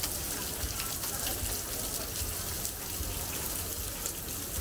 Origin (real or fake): real